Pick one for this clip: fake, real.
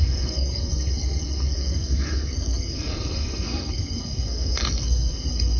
fake